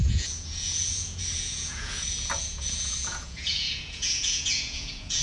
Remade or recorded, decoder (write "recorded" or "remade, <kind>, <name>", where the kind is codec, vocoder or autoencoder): remade, vocoder, Vocos